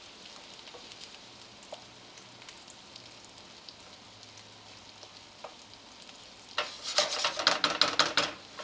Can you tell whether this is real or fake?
real